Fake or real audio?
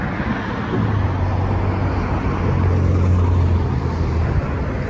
real